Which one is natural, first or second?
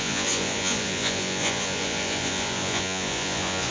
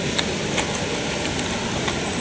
second